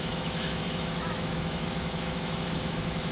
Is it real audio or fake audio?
fake